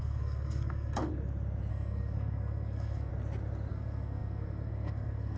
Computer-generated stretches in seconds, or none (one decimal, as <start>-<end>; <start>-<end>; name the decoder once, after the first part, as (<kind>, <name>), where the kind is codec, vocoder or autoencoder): 0.0-1.1 (codec, SNAC); 1.7-3.1; 3.7-5.4